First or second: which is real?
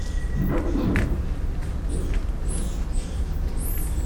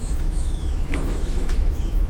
first